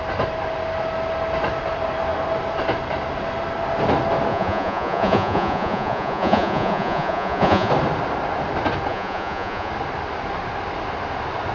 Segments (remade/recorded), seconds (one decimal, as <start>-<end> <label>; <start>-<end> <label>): 0.0-4.3 recorded; 4.3-7.7 remade; 7.7-8.9 recorded; 8.9-9.7 remade; 9.7-11.5 recorded